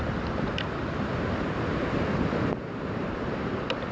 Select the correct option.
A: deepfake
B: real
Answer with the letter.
B